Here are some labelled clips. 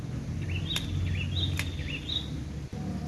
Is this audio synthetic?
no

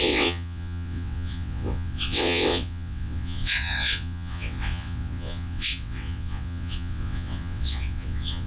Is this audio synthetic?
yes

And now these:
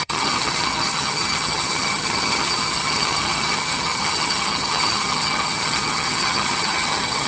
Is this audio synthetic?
yes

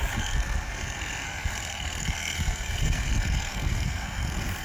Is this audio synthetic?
yes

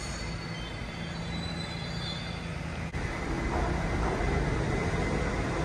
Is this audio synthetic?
no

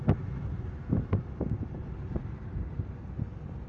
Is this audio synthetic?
no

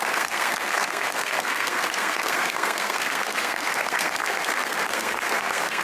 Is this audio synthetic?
yes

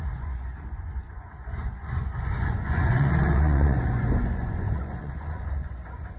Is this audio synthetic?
yes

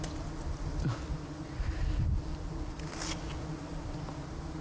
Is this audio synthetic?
no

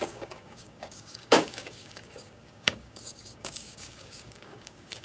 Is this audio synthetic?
yes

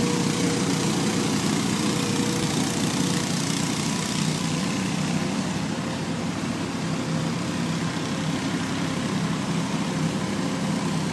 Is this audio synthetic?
yes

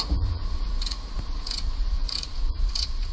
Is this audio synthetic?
yes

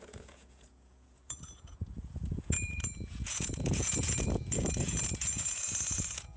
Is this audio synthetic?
yes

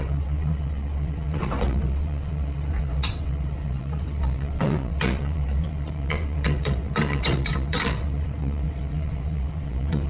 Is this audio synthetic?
yes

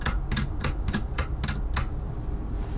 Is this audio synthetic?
no